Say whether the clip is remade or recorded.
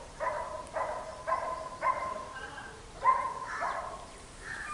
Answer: remade